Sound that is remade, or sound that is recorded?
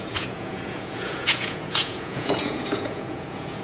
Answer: remade